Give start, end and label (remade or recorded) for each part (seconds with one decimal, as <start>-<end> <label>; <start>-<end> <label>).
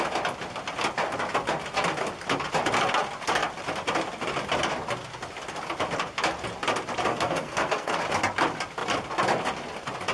0.0-7.1 recorded; 7.1-8.0 remade; 8.0-10.1 recorded